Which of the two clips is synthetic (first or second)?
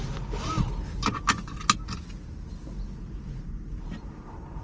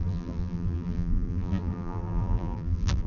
second